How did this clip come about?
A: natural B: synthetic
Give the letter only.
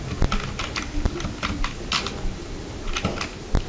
A